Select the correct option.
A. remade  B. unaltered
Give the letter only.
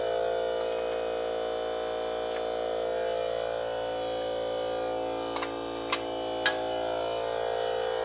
B